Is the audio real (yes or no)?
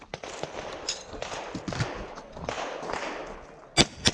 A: yes